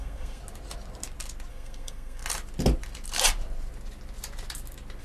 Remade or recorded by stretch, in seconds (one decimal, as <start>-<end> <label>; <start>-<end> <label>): 0.0-0.4 remade; 0.4-1.5 recorded; 1.5-2.2 remade; 2.2-5.0 recorded